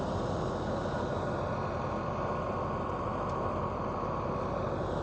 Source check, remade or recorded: recorded